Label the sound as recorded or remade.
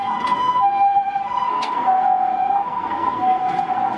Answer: remade